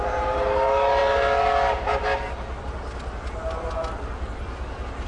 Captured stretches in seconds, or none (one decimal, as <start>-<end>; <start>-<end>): 0.0-5.1